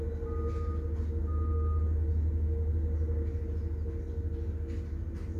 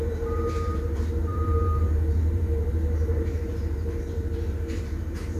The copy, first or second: second